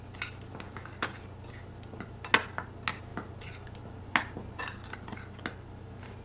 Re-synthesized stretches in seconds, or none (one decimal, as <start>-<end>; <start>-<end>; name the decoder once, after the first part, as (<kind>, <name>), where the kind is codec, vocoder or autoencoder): none